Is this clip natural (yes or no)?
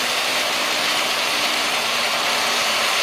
no